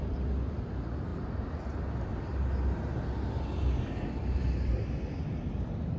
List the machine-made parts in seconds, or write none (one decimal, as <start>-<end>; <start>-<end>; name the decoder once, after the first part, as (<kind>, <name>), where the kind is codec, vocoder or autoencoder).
none